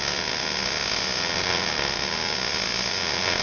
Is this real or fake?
real